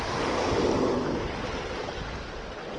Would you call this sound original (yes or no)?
yes